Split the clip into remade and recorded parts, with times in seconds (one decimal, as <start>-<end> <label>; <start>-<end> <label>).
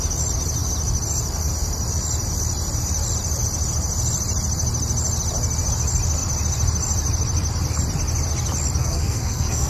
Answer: 0.0-8.8 recorded; 8.8-9.7 remade